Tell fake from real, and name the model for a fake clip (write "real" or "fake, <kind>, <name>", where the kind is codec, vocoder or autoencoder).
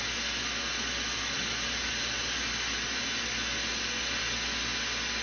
real